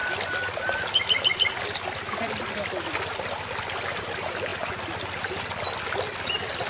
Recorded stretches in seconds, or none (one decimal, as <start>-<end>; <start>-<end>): 0.0-6.7